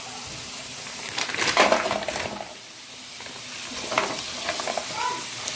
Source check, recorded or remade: recorded